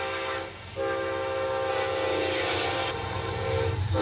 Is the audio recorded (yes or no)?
yes